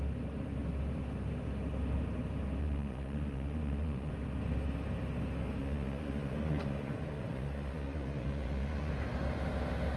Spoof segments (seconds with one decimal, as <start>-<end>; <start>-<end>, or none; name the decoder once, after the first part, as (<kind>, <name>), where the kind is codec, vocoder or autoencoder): 2.6-4.1 (vocoder, Vocos); 5.6-8.9